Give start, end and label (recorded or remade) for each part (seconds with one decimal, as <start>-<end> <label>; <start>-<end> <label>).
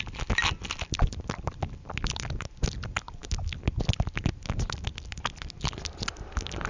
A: 0.0-6.7 recorded